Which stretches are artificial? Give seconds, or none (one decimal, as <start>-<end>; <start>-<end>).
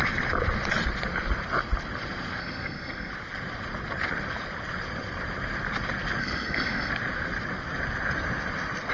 2.4-3.1; 6.2-6.9